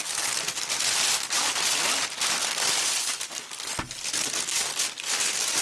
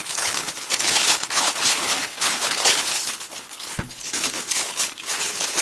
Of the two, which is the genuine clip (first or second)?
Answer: first